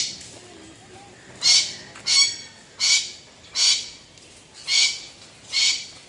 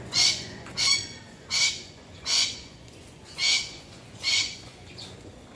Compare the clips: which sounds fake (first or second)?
second